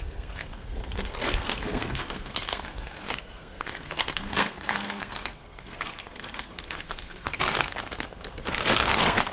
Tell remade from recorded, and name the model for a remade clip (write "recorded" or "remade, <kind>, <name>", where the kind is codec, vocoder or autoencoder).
remade, codec, SNAC